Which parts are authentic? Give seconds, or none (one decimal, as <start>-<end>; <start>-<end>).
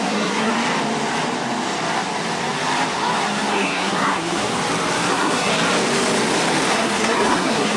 0.5-3.5; 4.5-5.1; 5.5-6.7